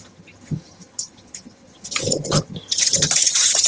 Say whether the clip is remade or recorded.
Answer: remade